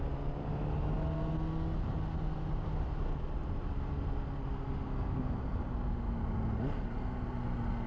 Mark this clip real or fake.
real